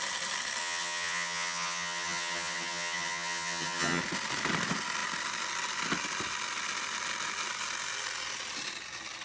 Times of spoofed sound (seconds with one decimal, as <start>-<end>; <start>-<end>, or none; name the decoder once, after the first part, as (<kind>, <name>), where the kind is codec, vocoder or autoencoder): 0.6-4.0 (vocoder, HiFi-GAN)